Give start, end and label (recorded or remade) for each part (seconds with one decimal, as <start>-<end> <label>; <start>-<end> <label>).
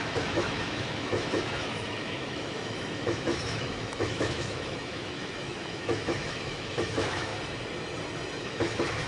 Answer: 0.0-7.3 remade; 7.3-8.4 recorded; 8.4-9.1 remade